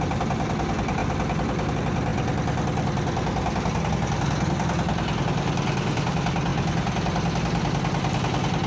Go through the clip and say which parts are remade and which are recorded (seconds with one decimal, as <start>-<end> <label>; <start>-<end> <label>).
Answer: 0.0-1.0 recorded; 1.0-1.7 remade; 1.7-8.7 recorded